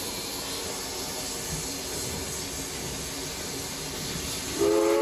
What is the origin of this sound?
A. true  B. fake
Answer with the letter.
A